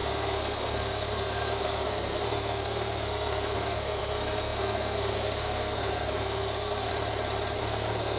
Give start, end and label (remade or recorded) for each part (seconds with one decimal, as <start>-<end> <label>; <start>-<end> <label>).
0.0-6.9 remade; 6.9-7.6 recorded; 7.6-8.2 remade